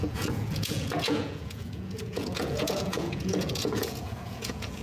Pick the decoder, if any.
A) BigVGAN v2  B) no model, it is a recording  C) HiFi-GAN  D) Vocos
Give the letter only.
D